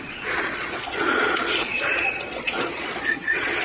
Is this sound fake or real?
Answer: fake